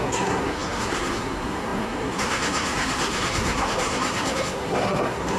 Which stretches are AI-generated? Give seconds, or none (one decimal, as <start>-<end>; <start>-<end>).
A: 0.0-5.4